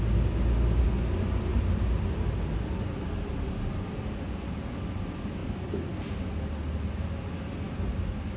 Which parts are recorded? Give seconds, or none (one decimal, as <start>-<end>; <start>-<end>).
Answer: 0.0-8.4